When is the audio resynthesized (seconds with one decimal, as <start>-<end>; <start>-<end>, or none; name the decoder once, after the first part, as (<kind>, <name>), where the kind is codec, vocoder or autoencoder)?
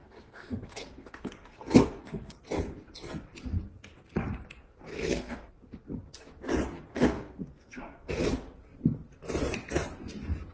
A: 0.0-2.4 (codec, SNAC); 4.9-5.5; 6.9-8.1